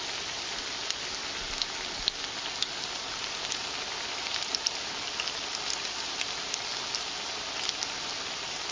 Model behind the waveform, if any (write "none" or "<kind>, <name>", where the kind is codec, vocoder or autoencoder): none